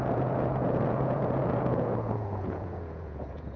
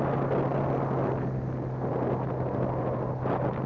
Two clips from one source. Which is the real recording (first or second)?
second